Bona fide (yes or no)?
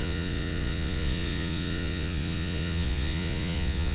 no